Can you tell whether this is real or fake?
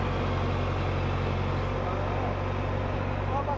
real